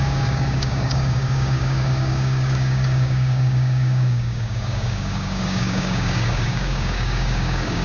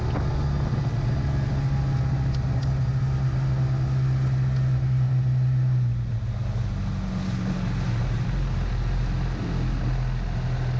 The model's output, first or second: first